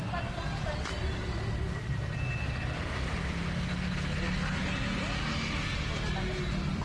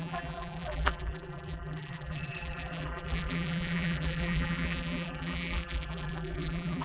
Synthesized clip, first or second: second